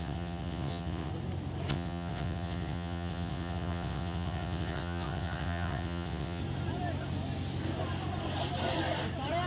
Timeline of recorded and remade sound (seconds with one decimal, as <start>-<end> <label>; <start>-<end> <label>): 0.0-1.1 remade; 1.1-1.7 recorded; 1.7-6.4 remade; 6.4-9.5 recorded